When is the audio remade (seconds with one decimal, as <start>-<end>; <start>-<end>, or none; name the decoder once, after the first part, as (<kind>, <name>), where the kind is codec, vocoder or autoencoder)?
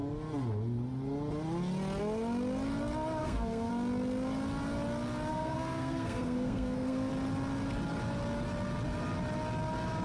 3.2-3.7 (codec, SNAC); 5.3-7.1